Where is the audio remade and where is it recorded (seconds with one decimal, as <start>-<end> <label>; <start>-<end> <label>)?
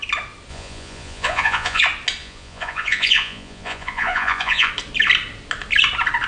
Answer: 0.0-0.5 recorded; 0.5-1.8 remade; 1.8-2.2 recorded; 2.2-4.7 remade; 4.7-6.3 recorded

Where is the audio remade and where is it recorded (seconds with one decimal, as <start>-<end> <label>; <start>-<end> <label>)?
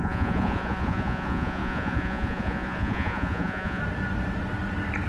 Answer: 0.0-3.8 remade; 3.8-5.1 recorded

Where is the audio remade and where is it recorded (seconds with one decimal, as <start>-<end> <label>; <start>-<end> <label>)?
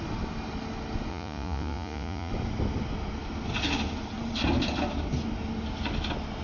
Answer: 0.0-1.1 recorded; 1.1-2.3 remade; 2.3-6.4 recorded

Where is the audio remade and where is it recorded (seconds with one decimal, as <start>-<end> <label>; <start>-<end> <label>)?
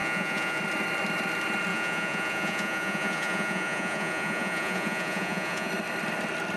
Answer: 0.0-0.6 remade; 0.6-1.7 recorded; 1.7-5.7 remade; 5.7-6.6 recorded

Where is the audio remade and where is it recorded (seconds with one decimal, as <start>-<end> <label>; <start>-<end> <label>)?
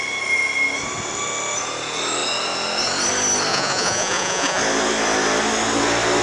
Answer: 0.0-3.5 recorded; 3.5-4.6 remade; 4.6-6.2 recorded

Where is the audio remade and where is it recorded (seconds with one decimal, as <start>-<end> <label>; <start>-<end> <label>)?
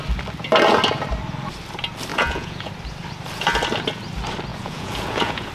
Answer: 0.0-2.1 recorded; 2.1-2.7 remade; 2.7-4.5 recorded; 4.5-5.5 remade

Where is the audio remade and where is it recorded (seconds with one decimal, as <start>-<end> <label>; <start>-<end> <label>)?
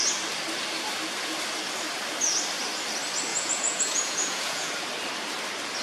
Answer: 0.0-3.3 recorded; 3.3-4.7 remade; 4.7-5.8 recorded